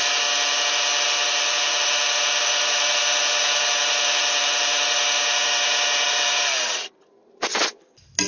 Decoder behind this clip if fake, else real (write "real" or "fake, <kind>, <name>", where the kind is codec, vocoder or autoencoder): real